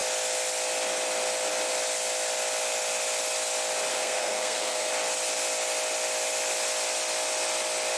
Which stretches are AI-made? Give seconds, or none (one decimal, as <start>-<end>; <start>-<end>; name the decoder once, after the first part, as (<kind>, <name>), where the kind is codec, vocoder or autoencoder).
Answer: 3.9-4.9 (codec, SNAC)